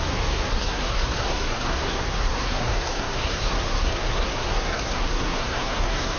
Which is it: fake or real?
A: fake